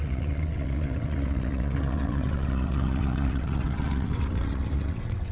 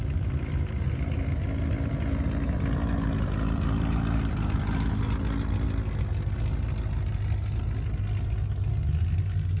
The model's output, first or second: first